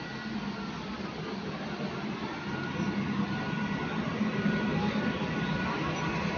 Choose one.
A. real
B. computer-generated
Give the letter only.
A